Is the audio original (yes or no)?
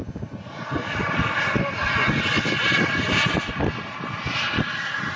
yes